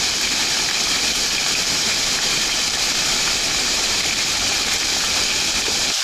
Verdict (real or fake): fake